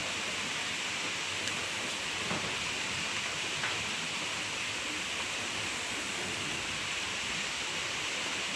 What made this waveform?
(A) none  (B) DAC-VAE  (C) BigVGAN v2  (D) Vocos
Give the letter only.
A